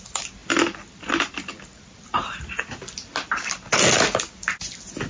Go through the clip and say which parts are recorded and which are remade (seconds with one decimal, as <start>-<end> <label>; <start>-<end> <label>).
0.0-5.1 recorded